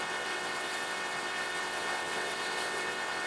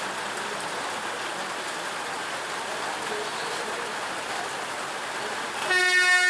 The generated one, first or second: first